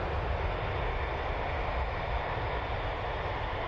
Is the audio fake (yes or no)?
no